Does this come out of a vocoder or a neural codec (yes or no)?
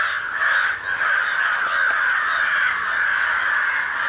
no